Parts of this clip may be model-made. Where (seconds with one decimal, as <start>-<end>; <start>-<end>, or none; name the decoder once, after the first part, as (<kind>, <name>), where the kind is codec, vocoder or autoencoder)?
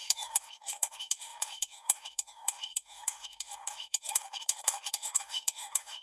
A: 0.0-6.0 (autoencoder, DAC-VAE)